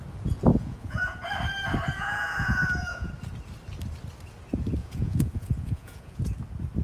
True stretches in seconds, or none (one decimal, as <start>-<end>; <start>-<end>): 0.0-0.5; 1.3-1.9; 3.1-4.8; 6.2-6.8